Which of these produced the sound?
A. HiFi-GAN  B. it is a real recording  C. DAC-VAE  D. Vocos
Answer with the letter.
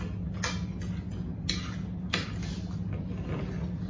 B